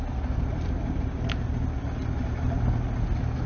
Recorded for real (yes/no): yes